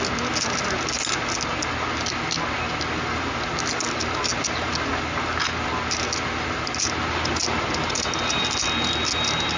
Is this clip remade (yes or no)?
no